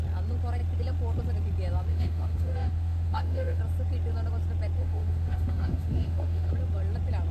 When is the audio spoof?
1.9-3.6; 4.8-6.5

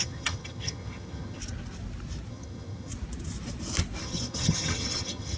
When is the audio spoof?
0.0-1.4; 2.3-2.9; 4.0-5.4

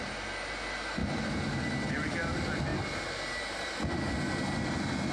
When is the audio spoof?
none

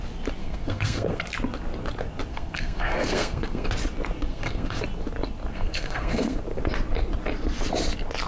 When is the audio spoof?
0.4-1.2; 2.3-3.7; 4.3-4.8; 5.5-6.4